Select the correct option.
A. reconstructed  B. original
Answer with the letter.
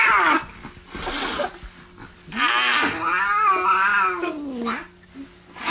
B